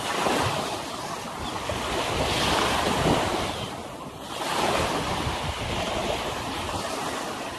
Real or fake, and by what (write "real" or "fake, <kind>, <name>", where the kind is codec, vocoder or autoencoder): real